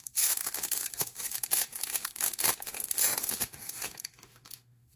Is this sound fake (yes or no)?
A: yes